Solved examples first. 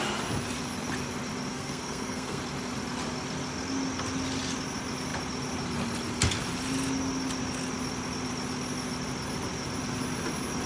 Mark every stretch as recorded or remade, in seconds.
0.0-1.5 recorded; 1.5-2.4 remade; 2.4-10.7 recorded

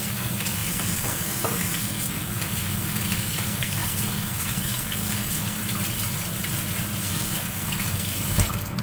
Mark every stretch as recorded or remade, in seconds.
0.0-5.6 remade; 5.6-7.0 recorded; 7.0-8.8 remade

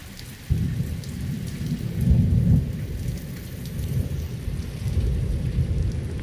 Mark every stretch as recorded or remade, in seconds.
0.0-6.2 recorded

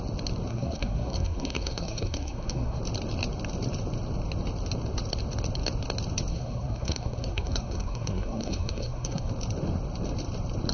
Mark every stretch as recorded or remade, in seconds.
0.0-0.5 recorded; 0.5-2.8 remade; 2.8-6.3 recorded; 6.3-9.3 remade; 9.3-10.7 recorded

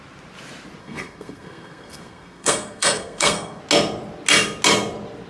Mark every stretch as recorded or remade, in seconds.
0.0-0.8 recorded; 0.8-3.6 remade; 3.6-5.3 recorded